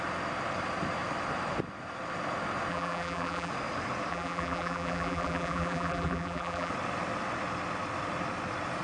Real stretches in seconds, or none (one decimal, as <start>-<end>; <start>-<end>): 0.0-2.7; 3.5-4.1; 6.7-8.8